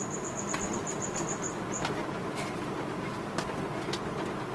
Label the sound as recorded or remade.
recorded